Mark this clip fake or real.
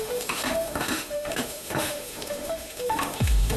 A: fake